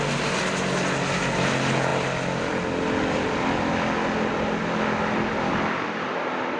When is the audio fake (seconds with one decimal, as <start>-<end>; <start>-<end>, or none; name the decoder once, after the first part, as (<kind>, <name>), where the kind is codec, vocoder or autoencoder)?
none